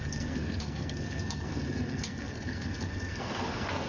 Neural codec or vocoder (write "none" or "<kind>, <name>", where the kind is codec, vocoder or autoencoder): codec, SNAC